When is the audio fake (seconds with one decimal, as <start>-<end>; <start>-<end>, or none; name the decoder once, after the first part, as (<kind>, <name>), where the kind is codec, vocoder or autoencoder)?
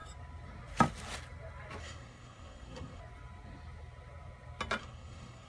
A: 1.8-3.0 (codec, SNAC); 4.8-5.5